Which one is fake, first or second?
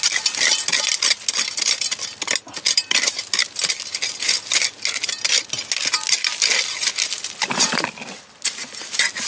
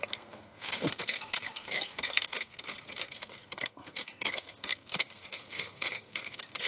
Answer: second